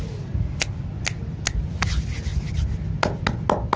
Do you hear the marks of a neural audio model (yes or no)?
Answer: no